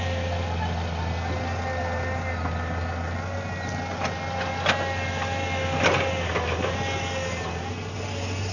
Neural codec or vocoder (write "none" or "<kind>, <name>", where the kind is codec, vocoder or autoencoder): none